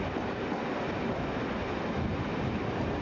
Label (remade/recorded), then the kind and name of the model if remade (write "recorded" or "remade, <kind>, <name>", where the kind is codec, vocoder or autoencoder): recorded